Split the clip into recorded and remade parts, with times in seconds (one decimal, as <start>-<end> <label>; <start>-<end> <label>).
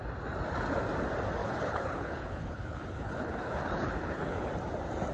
0.0-1.4 recorded; 1.4-4.5 remade; 4.5-5.1 recorded